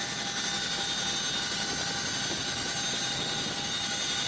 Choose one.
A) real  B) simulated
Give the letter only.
A